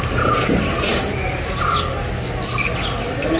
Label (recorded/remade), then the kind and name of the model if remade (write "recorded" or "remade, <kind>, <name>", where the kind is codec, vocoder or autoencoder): recorded